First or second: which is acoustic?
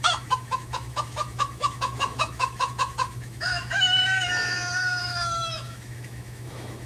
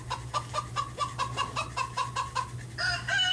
second